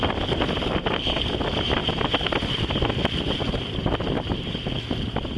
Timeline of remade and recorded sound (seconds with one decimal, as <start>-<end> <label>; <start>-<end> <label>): 0.0-5.4 recorded